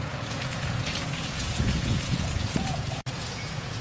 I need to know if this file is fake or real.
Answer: fake